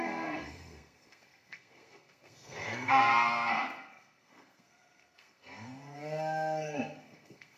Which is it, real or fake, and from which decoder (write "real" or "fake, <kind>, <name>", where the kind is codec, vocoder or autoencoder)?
fake, codec, SNAC